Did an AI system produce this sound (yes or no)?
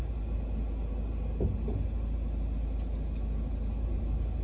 no